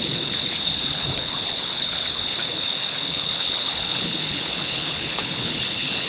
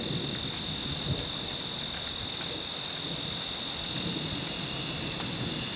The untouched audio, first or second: second